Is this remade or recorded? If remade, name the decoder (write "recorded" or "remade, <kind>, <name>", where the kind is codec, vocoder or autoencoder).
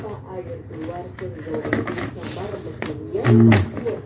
recorded